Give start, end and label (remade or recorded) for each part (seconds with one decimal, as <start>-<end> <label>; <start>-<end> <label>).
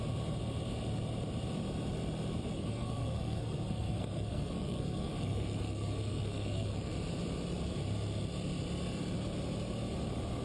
0.0-2.5 recorded; 2.5-6.9 remade; 6.9-10.4 recorded